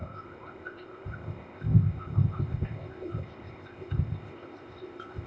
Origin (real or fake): fake